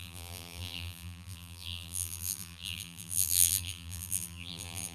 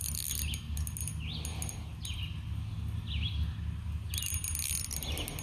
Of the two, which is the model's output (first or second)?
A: first